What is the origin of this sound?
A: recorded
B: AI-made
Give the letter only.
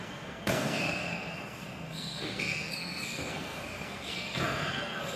B